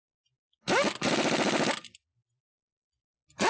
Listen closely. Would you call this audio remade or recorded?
recorded